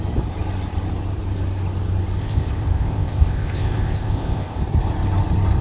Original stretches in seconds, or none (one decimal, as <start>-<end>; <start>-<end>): 0.0-2.2; 4.6-5.6